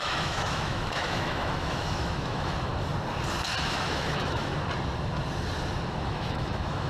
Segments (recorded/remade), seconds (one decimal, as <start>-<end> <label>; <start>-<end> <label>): 0.0-2.7 remade; 2.7-3.6 recorded; 3.6-4.5 remade; 4.5-5.9 recorded; 5.9-6.9 remade